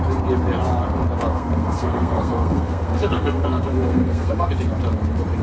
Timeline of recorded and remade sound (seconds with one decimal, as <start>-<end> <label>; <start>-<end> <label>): 0.0-1.3 recorded; 1.3-4.5 remade; 4.5-5.4 recorded